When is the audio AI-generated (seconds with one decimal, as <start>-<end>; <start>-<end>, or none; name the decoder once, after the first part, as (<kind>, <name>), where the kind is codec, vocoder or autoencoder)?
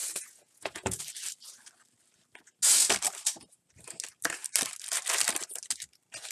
0.0-1.0 (vocoder, Vocos)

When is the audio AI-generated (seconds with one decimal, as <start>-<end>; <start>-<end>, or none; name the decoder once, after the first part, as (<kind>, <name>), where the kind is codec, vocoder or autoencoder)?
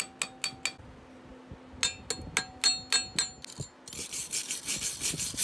none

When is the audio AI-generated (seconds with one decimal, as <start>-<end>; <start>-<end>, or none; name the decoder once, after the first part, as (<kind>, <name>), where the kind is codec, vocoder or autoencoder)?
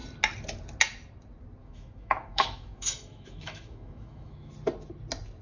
1.6-4.5 (autoencoder, DAC-VAE)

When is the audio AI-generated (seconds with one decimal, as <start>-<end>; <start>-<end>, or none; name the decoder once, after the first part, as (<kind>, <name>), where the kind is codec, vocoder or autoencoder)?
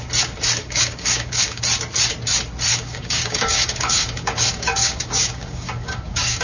0.6-1.6 (codec, DAC); 2.7-6.4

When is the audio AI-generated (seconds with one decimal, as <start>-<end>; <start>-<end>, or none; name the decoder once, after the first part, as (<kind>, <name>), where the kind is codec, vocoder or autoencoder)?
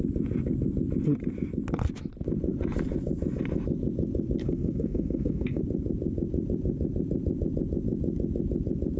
4.4-5.6 (codec, SNAC)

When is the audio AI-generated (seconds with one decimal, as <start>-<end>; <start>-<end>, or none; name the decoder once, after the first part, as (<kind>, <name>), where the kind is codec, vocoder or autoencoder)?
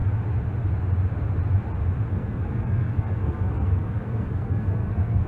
2.1-5.3 (codec, SNAC)